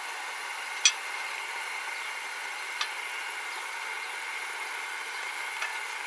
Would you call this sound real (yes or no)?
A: yes